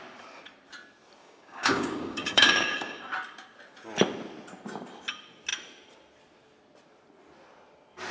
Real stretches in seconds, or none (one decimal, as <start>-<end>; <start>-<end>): 0.0-1.2; 3.0-8.1